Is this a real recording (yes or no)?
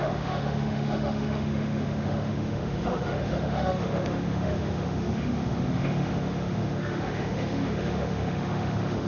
no